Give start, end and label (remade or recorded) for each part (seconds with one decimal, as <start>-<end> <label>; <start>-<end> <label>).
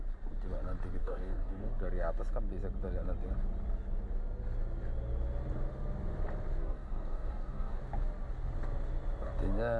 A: 0.0-1.0 recorded; 1.0-1.7 remade; 1.7-6.6 recorded; 6.6-7.8 remade; 7.8-9.8 recorded